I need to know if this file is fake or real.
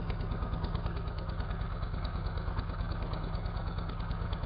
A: fake